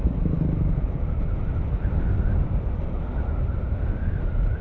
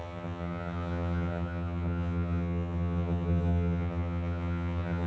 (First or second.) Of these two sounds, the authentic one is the first